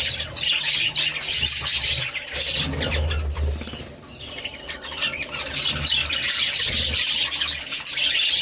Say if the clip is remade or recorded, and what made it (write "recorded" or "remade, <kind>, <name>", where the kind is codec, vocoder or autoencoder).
recorded